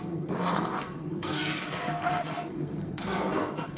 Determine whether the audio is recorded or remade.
remade